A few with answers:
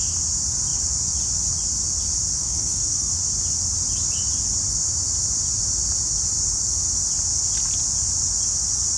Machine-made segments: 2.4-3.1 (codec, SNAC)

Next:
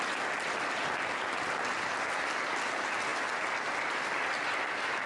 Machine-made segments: none

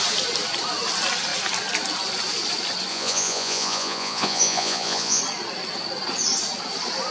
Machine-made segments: 2.9-5.2 (vocoder, Vocos)

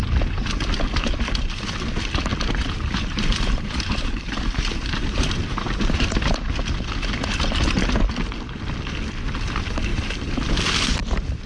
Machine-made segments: 2.3-6.2 (vocoder, BigVGAN v2); 9.9-10.5

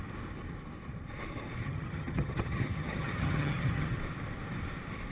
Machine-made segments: 1.6-4.0 (vocoder, HiFi-GAN)

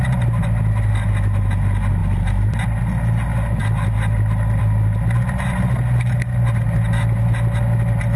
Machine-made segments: none

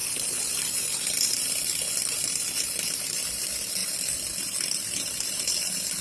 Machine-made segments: 0.0-1.9 (vocoder, BigVGAN v2); 3.8-5.4

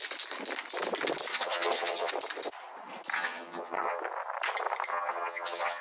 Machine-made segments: 1.3-2.1 (vocoder, HiFi-GAN); 3.1-4.0; 4.9-5.8